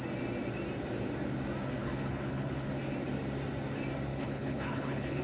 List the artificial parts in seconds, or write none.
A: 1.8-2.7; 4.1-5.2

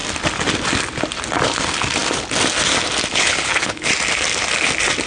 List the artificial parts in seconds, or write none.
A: 3.1-3.9

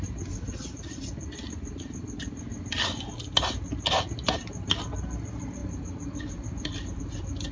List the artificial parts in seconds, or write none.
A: none